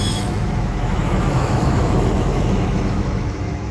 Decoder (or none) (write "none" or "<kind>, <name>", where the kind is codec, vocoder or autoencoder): autoencoder, DAC-VAE